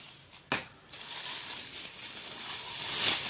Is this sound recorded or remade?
recorded